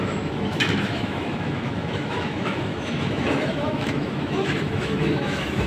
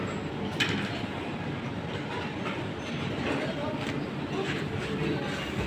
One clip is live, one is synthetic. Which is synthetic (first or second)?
first